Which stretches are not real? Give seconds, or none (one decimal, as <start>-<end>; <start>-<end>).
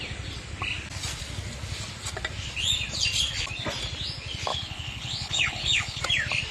4.5-6.0